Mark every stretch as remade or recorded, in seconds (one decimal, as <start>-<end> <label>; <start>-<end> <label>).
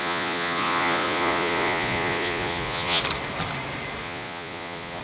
0.0-3.0 remade; 3.0-4.0 recorded; 4.0-5.0 remade